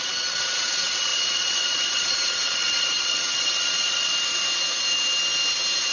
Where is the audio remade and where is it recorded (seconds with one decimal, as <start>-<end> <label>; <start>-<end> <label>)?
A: 0.0-4.1 remade; 4.1-5.9 recorded